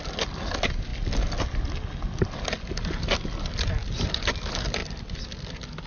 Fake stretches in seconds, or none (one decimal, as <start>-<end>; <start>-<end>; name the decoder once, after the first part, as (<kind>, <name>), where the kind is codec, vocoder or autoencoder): none